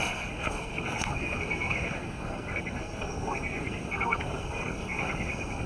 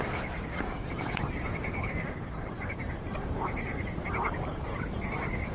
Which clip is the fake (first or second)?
first